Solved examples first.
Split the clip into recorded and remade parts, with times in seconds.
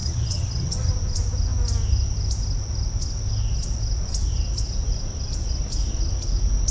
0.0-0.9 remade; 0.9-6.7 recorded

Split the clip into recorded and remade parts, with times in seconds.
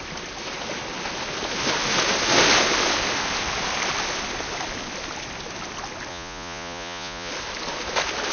0.0-6.1 recorded; 6.1-7.3 remade; 7.3-8.3 recorded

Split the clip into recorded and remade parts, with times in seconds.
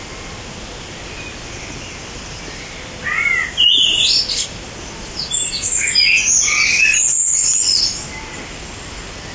0.0-6.9 recorded; 6.9-7.8 remade; 7.8-9.3 recorded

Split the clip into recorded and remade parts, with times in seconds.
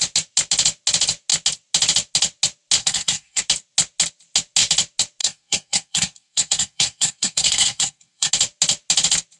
0.0-2.8 recorded; 2.8-3.4 remade; 3.4-5.2 recorded; 5.2-8.3 remade; 8.3-9.4 recorded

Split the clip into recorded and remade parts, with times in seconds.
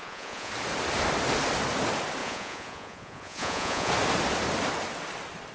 0.0-0.5 remade; 0.5-2.2 recorded; 2.2-3.9 remade; 3.9-5.5 recorded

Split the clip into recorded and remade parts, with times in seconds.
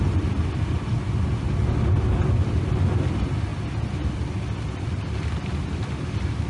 0.0-6.5 recorded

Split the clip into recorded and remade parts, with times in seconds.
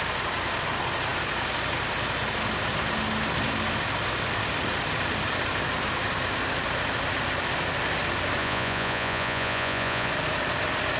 0.0-8.4 recorded; 8.4-10.1 remade; 10.1-11.0 recorded